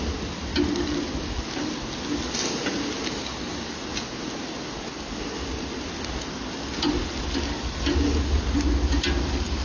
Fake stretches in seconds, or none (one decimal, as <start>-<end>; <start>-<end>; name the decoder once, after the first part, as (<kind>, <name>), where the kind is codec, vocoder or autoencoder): none